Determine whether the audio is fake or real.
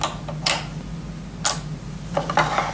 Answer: real